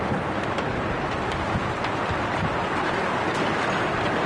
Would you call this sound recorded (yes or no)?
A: yes